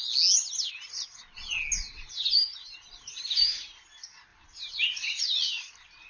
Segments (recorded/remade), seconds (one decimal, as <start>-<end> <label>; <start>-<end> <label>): 0.0-4.3 recorded; 4.3-5.2 remade; 5.2-6.1 recorded